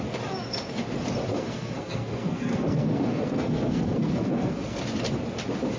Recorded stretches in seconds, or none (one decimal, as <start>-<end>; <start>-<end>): 0.0-1.3; 4.8-5.8